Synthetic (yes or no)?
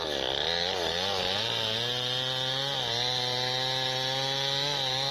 no